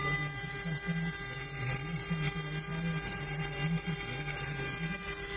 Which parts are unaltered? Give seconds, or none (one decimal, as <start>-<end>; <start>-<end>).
0.0-5.4